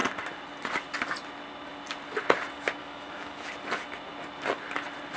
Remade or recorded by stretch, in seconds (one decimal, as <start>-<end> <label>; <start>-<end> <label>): 0.0-2.8 recorded; 2.8-3.5 remade; 3.5-5.2 recorded